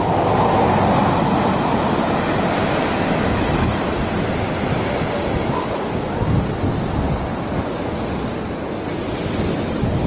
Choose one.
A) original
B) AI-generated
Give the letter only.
A